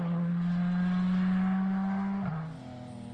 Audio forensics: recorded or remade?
recorded